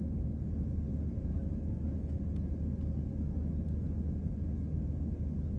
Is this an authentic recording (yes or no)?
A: yes